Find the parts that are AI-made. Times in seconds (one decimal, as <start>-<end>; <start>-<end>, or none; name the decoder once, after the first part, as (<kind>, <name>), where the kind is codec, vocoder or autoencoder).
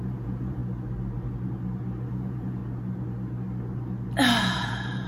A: 0.0-0.6 (vocoder, Vocos); 2.1-2.6; 4.4-5.1